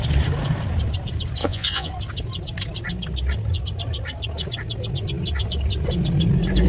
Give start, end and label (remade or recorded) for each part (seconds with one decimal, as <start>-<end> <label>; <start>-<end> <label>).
0.0-1.4 recorded; 1.4-1.9 remade; 1.9-6.7 recorded